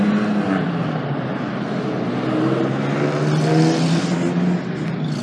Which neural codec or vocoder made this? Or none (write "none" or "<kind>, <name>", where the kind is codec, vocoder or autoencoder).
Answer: none